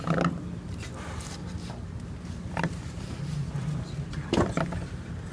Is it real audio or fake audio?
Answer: real